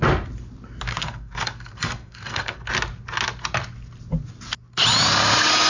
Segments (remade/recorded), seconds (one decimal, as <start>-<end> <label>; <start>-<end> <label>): 0.0-0.9 recorded; 0.9-2.7 remade; 2.7-5.7 recorded